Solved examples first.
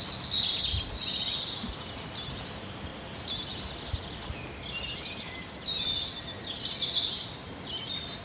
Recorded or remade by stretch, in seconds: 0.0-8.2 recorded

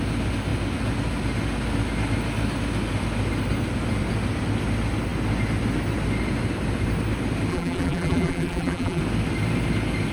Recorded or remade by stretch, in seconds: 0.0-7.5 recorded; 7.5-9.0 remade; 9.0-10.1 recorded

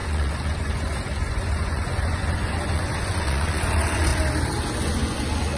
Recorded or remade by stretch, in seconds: 0.0-4.1 remade; 4.1-4.8 recorded; 4.8-5.6 remade

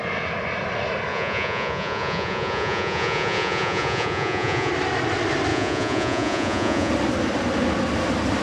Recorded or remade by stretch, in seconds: 0.0-1.1 recorded; 1.1-4.7 remade; 4.7-5.5 recorded; 5.5-6.9 remade; 6.9-8.4 recorded

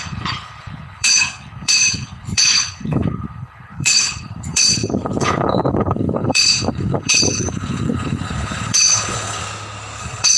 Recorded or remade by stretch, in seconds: 0.0-9.4 remade; 9.4-10.0 recorded; 10.0-10.4 remade